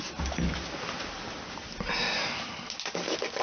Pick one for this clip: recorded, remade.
recorded